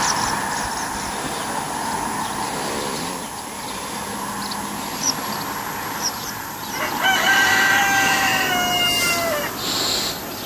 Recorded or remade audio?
recorded